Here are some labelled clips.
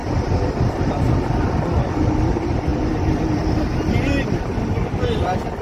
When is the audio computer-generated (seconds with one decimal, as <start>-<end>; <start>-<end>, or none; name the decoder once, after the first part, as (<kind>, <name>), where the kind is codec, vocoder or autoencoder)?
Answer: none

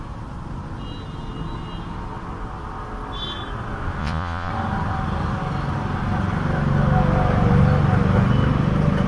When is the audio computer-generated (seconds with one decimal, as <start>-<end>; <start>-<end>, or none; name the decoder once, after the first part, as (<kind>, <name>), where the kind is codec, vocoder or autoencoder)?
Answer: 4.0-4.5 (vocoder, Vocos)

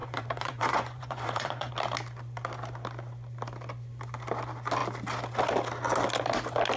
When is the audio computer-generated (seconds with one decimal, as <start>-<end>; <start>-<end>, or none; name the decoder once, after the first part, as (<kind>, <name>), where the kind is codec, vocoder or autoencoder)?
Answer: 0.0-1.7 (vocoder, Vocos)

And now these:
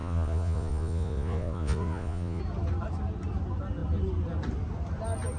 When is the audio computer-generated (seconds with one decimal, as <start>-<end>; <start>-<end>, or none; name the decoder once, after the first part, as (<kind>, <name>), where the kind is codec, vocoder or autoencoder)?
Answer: 0.0-2.4 (vocoder, Vocos)

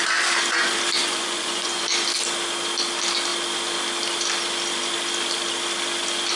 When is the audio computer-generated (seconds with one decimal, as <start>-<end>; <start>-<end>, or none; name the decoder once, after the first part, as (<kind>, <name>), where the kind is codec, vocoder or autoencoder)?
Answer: 1.0-1.8 (vocoder, Vocos)

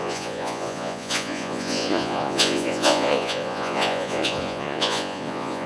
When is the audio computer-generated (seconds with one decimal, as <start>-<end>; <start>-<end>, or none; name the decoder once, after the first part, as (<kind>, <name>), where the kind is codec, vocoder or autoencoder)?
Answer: 0.0-5.7 (vocoder, Vocos)

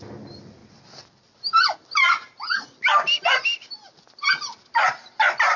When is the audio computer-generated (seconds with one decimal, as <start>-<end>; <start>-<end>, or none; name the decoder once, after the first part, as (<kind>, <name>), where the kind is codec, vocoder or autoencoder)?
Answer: none